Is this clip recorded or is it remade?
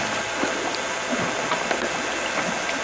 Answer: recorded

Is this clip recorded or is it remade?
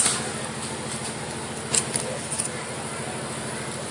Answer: recorded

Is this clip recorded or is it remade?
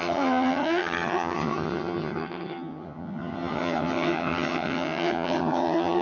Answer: remade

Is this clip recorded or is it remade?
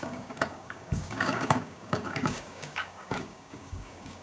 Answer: remade